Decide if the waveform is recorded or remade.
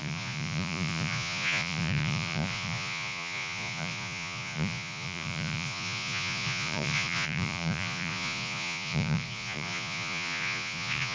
remade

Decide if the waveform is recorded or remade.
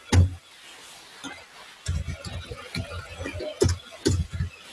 recorded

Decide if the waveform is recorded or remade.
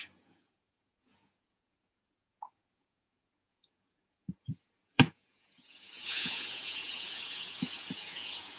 remade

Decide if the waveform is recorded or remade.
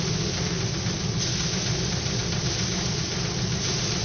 recorded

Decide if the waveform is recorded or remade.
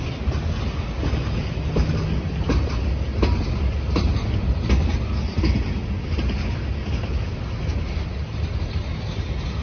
recorded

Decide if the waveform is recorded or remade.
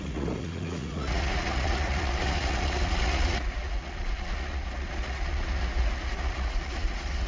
remade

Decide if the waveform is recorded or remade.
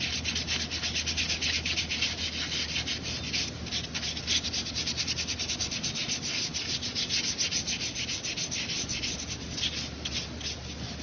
recorded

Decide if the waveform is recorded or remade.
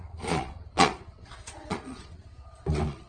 remade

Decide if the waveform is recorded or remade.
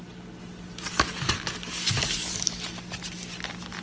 recorded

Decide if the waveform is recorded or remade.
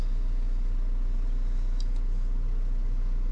recorded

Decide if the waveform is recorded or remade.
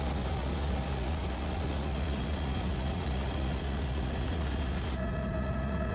remade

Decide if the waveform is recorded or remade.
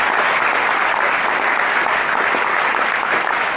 recorded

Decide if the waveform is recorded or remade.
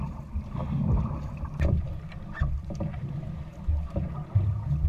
recorded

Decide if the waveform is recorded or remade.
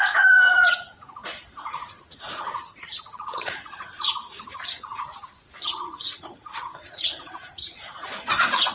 remade